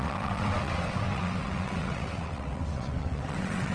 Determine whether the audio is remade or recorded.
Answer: remade